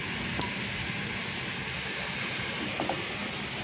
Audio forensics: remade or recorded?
recorded